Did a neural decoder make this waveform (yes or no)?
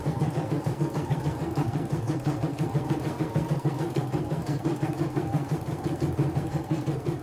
yes